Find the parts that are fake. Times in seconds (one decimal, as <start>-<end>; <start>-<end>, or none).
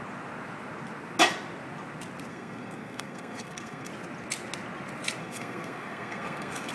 2.3-3.9; 5.2-6.7